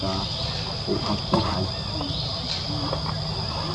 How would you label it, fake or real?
real